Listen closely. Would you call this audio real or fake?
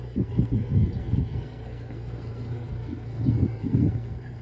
fake